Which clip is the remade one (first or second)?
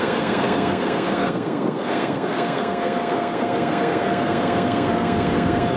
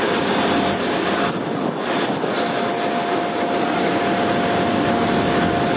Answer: first